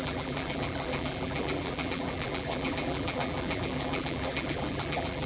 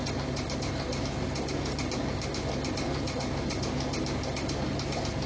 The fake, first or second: first